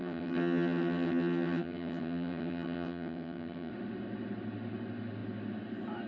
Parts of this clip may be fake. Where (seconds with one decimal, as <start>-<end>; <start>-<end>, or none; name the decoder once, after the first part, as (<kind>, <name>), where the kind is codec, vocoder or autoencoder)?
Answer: 0.0-3.7 (vocoder, HiFi-GAN)